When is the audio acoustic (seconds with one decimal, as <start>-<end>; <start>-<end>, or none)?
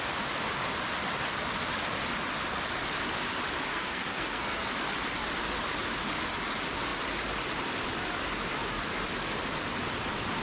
0.0-3.7; 4.7-10.4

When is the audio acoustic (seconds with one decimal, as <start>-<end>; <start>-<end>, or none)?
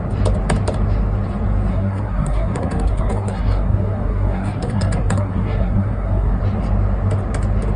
0.0-1.7; 6.4-7.8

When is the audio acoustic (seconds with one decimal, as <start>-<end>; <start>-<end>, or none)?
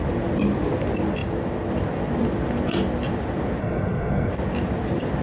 0.0-3.6; 4.3-5.2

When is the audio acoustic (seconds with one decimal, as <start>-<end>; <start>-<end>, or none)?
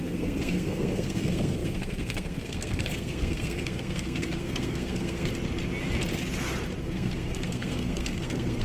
5.3-6.8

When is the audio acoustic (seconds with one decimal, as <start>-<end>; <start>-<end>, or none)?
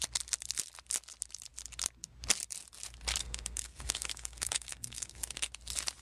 0.0-3.2; 5.5-6.0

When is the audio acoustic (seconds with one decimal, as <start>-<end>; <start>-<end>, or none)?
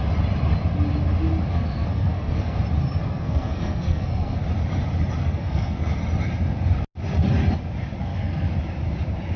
0.0-1.5; 2.6-3.0; 4.4-5.2; 5.9-8.0; 8.5-9.4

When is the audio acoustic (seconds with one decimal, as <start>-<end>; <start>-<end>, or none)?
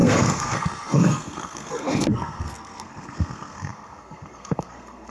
none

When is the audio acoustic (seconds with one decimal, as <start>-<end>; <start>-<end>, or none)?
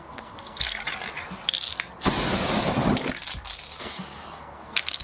0.8-3.8